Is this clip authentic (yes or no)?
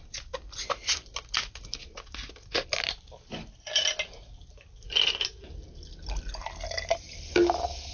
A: yes